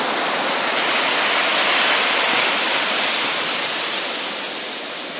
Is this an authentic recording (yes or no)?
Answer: yes